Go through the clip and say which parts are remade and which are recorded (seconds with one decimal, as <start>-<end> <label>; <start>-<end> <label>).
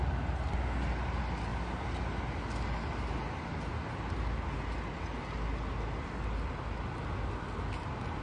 0.0-8.2 recorded